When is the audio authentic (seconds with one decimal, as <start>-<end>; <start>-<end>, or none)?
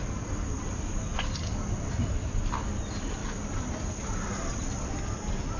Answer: 0.0-1.1; 2.7-3.2; 3.8-4.3; 4.9-5.6